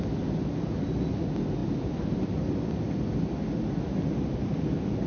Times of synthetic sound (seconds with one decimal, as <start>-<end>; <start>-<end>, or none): none